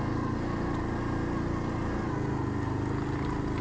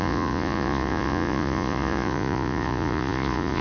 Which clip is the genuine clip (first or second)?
first